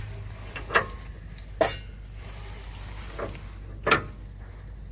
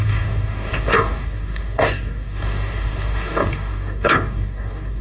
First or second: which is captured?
first